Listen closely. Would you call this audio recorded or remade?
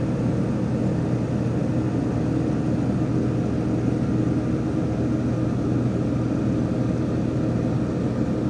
recorded